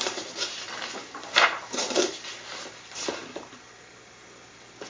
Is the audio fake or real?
real